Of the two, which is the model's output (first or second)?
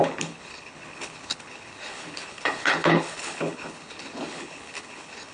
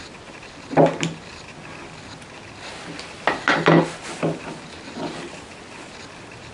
first